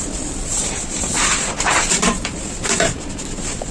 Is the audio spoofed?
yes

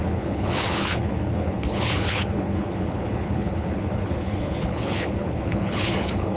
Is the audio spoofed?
yes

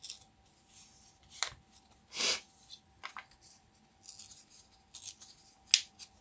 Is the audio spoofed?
no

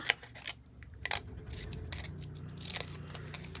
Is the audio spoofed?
no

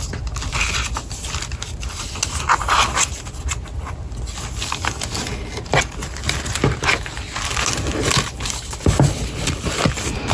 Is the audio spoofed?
no